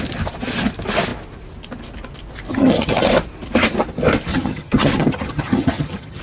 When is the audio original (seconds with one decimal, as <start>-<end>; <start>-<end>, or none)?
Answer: 0.0-2.5; 3.1-4.3